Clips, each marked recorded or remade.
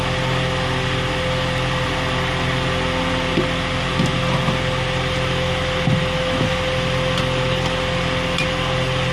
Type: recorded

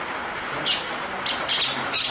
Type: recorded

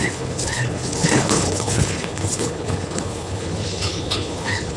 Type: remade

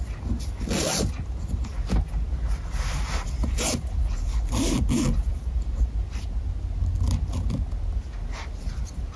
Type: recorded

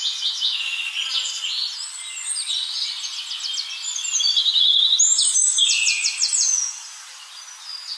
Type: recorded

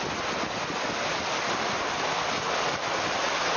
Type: recorded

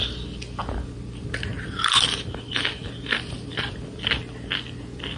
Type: recorded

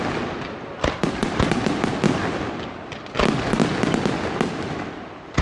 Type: recorded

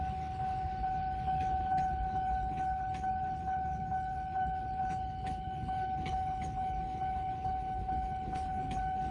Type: remade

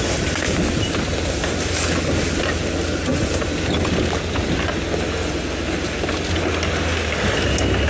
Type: recorded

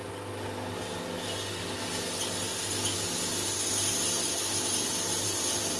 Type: recorded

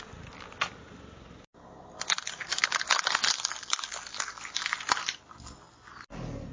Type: recorded